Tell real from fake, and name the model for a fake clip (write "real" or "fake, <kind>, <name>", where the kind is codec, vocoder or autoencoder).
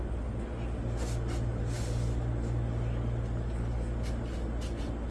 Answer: real